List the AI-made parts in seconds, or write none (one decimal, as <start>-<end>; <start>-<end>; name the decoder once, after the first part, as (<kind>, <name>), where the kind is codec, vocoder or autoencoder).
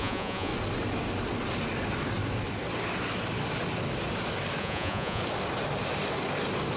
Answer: 0.0-0.5 (vocoder, Vocos); 4.6-5.2